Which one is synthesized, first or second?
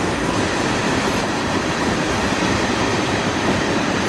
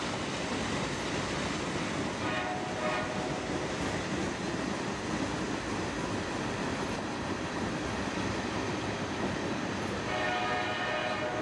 first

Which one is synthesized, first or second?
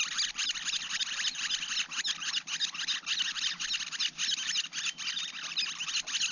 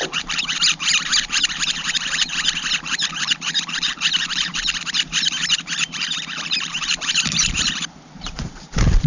second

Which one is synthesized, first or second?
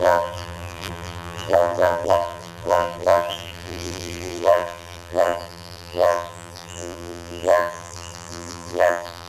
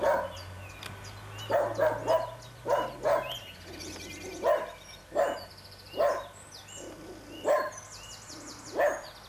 first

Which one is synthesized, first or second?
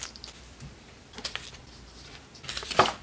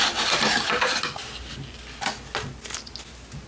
first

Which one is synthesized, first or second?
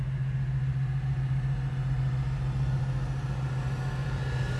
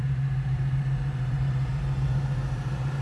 second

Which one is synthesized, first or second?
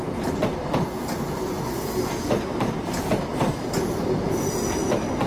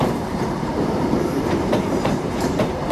second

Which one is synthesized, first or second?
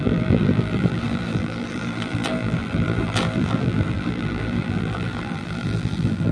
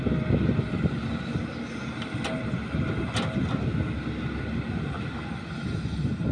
first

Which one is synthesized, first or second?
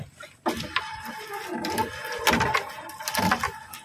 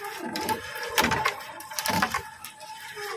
second